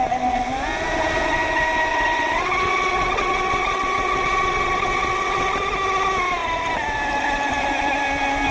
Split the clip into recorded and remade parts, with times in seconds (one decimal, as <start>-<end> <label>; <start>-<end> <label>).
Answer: 0.0-1.9 recorded; 1.9-5.5 remade; 5.5-8.5 recorded